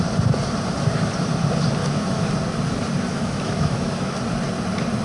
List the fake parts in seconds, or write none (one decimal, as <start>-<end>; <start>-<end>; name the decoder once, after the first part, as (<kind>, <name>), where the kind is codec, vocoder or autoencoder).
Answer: 1.8-2.3 (autoencoder, DAC-VAE); 3.1-4.1